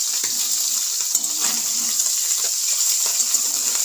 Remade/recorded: remade